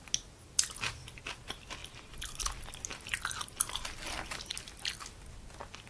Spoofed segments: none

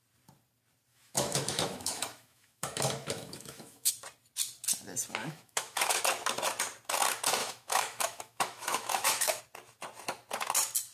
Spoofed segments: 0.9-3.9; 5.2-6.0; 7.4-9.4